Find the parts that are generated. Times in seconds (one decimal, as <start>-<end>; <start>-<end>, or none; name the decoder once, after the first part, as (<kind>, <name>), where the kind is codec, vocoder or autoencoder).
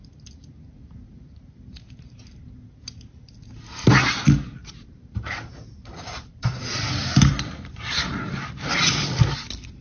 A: 4.6-6.6 (vocoder, BigVGAN v2); 7.0-8.5